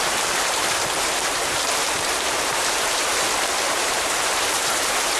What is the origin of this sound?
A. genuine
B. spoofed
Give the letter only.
B